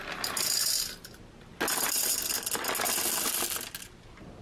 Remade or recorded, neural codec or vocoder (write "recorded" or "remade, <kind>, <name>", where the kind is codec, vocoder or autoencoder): recorded